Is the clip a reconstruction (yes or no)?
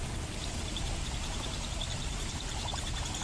no